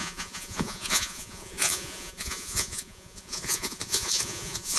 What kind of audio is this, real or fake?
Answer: fake